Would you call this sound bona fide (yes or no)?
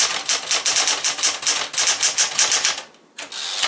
yes